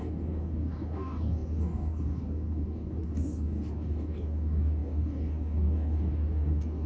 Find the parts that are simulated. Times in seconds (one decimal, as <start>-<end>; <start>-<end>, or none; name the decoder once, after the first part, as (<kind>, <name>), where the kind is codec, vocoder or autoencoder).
0.0-6.9 (codec, DAC)